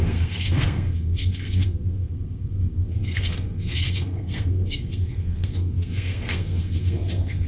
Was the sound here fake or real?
fake